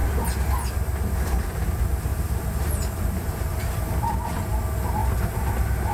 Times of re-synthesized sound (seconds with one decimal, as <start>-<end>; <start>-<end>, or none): 2.1-4.6; 5.0-5.9